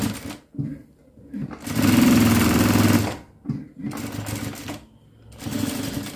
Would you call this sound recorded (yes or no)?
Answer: yes